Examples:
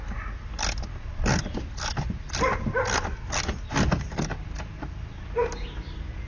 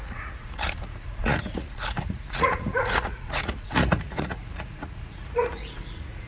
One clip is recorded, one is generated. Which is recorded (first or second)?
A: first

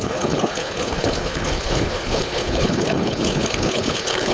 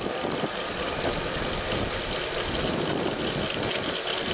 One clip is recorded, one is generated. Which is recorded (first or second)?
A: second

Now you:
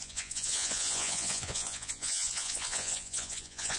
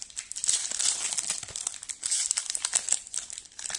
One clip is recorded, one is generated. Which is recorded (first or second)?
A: second